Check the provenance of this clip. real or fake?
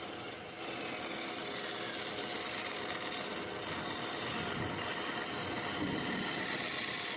real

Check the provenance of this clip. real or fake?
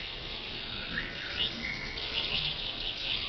fake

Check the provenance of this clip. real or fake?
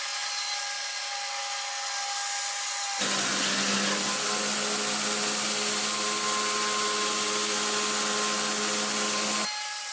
real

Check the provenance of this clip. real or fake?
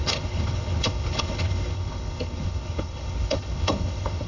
fake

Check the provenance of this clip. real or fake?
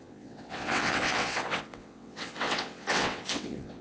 fake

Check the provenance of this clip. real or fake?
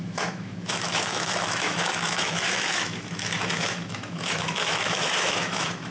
fake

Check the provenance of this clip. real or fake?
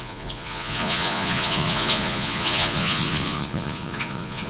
fake